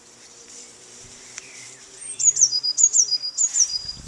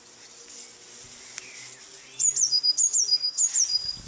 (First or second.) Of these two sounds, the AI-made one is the first